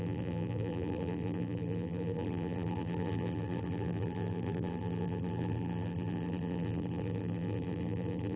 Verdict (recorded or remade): remade